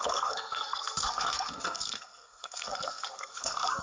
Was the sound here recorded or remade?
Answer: remade